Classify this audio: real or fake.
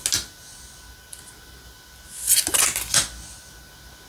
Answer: real